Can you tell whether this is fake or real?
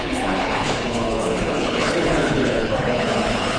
fake